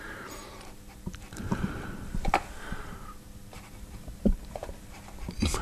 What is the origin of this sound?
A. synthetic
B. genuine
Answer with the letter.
A